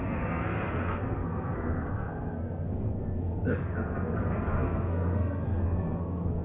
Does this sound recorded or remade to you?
remade